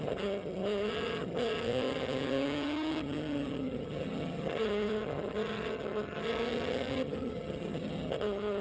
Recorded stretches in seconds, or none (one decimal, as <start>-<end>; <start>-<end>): none